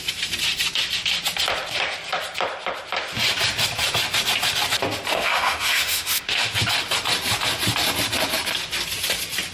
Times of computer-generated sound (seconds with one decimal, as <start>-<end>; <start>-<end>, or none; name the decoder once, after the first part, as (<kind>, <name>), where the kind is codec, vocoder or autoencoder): 5.1-6.6 (autoencoder, DAC-VAE)